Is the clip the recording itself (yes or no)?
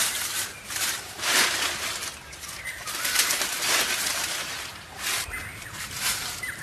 no